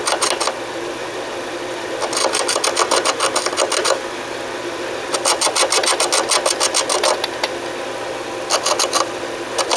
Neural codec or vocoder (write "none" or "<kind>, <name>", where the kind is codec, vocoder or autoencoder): none